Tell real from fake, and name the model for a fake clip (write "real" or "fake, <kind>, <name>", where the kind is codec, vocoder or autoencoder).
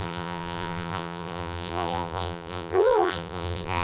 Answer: fake, vocoder, BigVGAN v2